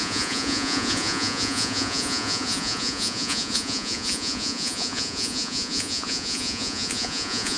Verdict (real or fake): fake